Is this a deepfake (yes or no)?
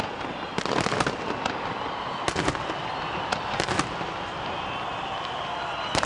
no